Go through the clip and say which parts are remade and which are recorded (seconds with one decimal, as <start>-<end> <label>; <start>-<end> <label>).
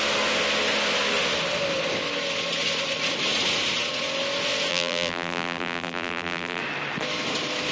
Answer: 0.0-4.7 recorded; 4.7-6.6 remade; 6.6-7.7 recorded